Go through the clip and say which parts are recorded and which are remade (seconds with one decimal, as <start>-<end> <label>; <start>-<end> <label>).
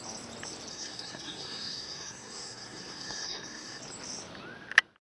0.0-0.7 recorded; 0.7-3.8 remade; 3.8-5.1 recorded